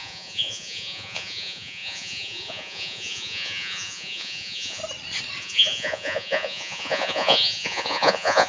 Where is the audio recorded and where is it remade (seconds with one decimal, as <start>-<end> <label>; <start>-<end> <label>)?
0.0-4.8 remade; 4.8-5.4 recorded; 5.4-8.5 remade